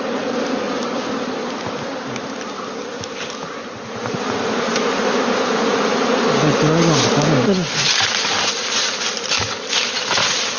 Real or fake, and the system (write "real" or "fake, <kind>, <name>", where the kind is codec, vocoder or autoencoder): real